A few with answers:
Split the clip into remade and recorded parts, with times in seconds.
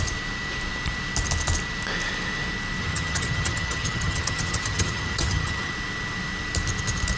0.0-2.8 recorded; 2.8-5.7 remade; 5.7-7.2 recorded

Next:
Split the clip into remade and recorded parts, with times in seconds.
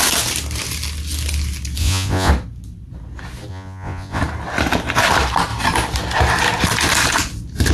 0.0-1.8 recorded; 1.8-2.3 remade; 2.3-3.5 recorded; 3.5-4.2 remade; 4.2-7.7 recorded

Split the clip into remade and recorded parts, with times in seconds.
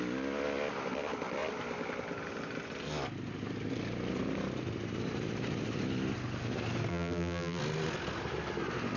0.0-6.9 recorded; 6.9-7.6 remade; 7.6-9.0 recorded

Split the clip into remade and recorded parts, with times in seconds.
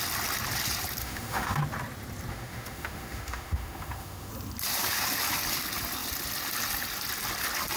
0.0-1.0 recorded; 1.0-1.6 remade; 1.6-2.3 recorded; 2.3-4.3 remade; 4.3-7.8 recorded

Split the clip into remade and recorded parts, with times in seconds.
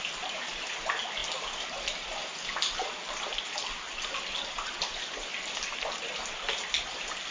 0.0-7.3 recorded